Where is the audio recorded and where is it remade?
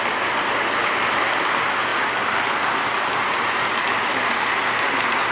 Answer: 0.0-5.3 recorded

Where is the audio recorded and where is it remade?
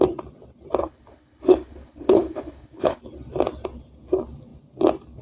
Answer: 0.0-0.8 recorded; 0.8-3.0 remade; 3.0-5.2 recorded